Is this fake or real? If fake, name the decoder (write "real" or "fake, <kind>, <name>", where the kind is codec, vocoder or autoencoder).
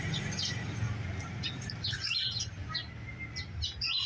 real